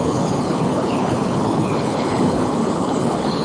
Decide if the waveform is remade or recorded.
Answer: remade